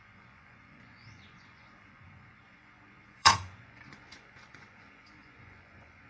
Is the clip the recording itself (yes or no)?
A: no